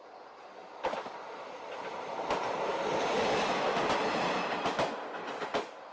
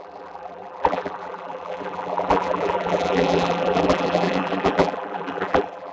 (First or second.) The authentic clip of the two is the first